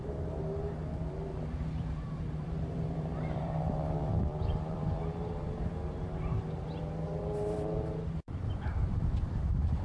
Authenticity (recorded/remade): remade